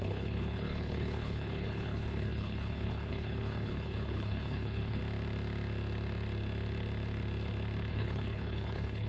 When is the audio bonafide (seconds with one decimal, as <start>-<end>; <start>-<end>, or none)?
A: 5.0-7.9